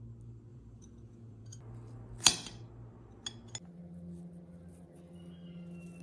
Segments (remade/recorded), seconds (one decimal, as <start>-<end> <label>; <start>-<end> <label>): 0.0-0.5 recorded; 0.5-1.6 remade; 1.6-6.0 recorded